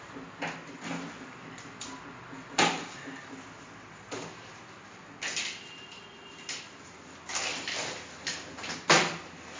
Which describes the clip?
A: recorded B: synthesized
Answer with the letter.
A